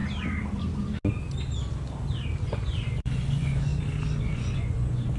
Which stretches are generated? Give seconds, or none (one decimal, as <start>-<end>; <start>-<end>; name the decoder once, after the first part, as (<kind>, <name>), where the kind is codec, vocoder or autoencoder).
2.4-3.7 (vocoder, Vocos); 4.3-5.2